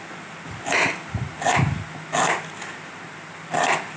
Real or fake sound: real